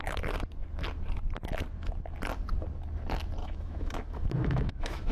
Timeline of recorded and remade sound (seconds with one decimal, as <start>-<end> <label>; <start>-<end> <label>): 0.0-3.4 recorded; 3.4-5.1 remade